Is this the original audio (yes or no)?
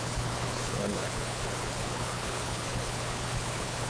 no